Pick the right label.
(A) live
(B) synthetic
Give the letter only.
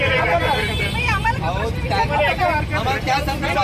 A